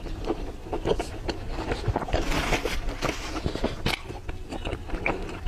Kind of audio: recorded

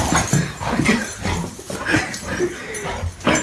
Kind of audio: recorded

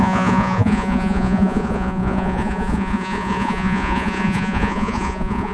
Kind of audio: remade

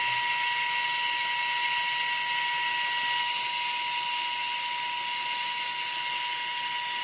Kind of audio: recorded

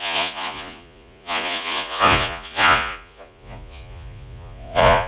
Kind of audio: remade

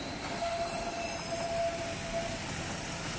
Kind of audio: recorded